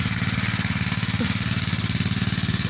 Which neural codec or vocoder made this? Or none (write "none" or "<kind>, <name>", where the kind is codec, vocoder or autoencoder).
none